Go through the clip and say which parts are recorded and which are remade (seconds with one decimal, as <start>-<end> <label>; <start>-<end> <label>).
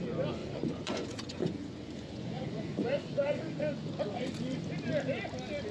0.0-0.4 recorded; 0.4-3.6 remade; 3.6-5.7 recorded